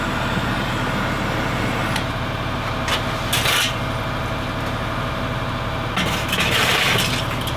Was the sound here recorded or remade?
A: recorded